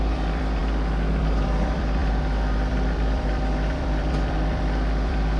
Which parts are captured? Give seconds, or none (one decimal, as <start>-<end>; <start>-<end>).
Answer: 0.6-1.2